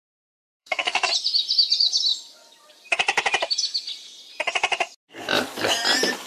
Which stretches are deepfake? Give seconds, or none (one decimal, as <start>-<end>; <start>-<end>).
0.6-1.1